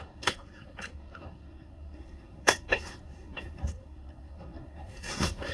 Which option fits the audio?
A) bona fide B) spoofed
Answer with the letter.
B